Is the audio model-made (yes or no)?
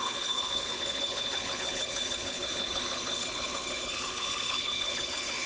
yes